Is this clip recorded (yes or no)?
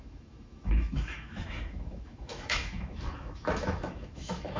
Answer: no